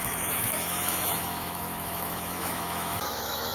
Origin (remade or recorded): remade